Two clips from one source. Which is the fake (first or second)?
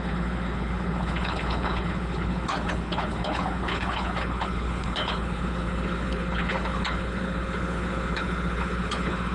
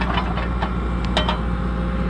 first